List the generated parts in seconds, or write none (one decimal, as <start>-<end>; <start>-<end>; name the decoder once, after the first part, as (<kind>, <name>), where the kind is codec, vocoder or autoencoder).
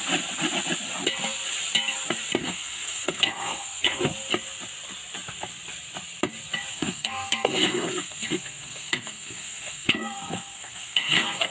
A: 2.4-4.0 (codec, SNAC); 6.7-11.5